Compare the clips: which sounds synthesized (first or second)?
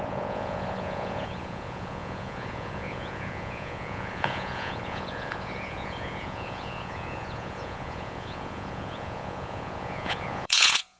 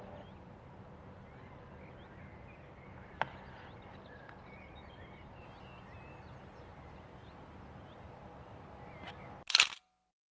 first